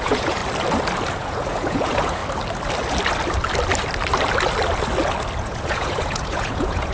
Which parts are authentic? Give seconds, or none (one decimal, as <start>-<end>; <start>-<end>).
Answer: 0.4-1.1; 2.2-5.4